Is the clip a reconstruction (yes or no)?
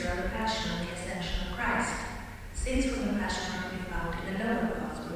yes